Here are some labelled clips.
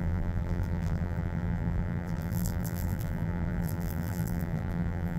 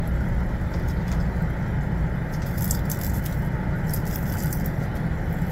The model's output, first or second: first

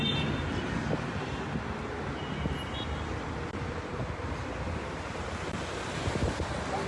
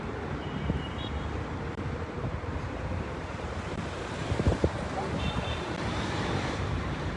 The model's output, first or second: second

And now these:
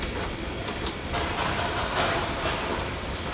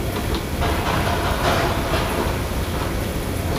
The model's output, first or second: first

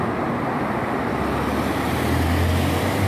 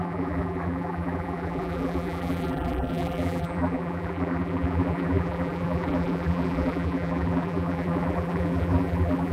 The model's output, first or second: second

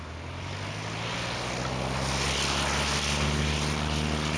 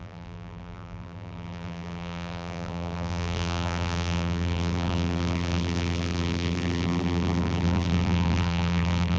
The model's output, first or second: second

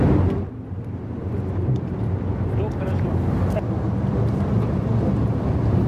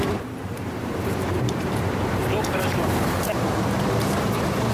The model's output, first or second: second